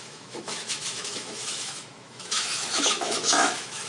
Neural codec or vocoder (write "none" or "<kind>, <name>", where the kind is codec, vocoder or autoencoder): autoencoder, DAC-VAE